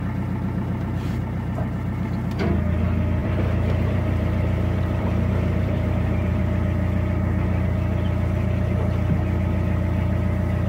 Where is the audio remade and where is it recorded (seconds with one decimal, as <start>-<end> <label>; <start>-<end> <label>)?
0.0-3.2 recorded; 3.2-6.4 remade; 6.4-10.7 recorded